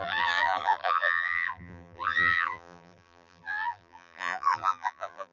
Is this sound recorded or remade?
remade